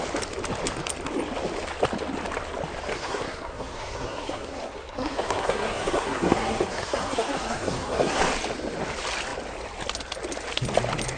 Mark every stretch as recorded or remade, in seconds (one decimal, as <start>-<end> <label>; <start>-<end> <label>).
0.0-2.9 recorded; 2.9-8.2 remade; 8.2-11.2 recorded